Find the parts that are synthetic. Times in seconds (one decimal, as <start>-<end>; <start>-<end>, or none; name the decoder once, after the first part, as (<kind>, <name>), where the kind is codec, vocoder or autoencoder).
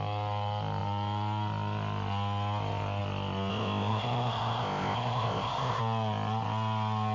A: 3.5-5.8 (codec, ZipCodec)